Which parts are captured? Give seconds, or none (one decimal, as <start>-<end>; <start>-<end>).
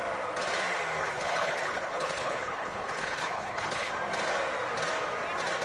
0.0-1.0; 3.9-5.6